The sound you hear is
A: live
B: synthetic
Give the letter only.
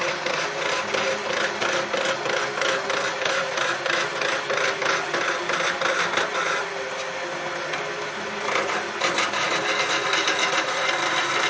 A